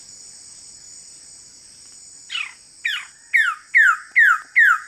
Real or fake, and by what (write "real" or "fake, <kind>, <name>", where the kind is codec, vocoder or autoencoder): real